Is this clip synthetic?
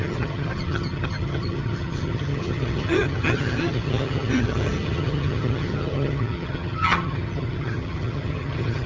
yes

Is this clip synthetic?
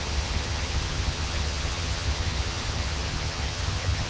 yes